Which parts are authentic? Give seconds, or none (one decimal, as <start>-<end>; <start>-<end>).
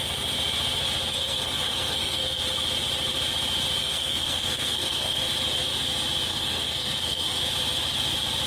0.0-1.1; 2.4-3.8; 5.3-6.3; 7.4-8.5